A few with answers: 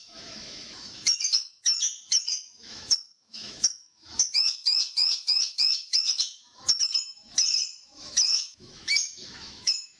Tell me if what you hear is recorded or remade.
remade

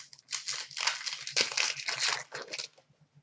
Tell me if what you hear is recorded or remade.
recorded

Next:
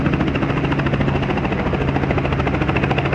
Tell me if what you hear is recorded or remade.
recorded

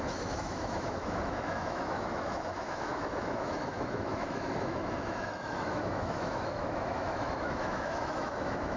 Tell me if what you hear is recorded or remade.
remade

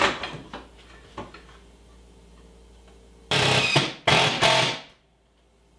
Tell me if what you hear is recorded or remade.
recorded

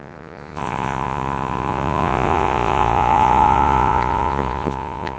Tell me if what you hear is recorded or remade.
remade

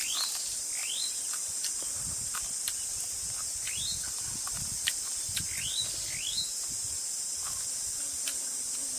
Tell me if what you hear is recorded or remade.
recorded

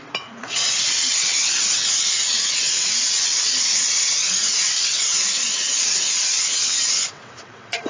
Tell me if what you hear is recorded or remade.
remade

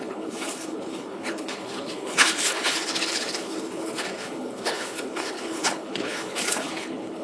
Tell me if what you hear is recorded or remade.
remade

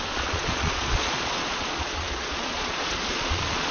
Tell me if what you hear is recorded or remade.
remade